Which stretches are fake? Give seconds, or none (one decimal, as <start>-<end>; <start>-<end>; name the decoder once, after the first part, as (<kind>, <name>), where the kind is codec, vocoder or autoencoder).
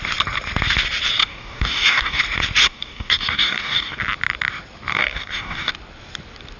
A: 1.2-2.2 (codec, DAC); 2.6-4.0; 4.9-5.7